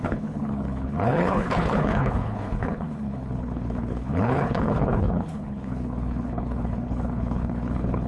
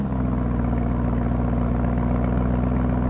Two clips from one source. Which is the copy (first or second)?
first